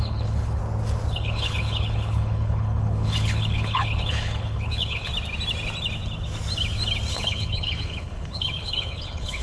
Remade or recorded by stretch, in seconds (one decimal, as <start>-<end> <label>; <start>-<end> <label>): 0.0-0.6 remade; 0.6-1.1 recorded; 1.1-5.1 remade; 5.1-7.1 recorded; 7.1-9.4 remade